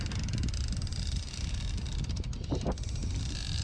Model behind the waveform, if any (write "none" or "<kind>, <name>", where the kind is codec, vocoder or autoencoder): none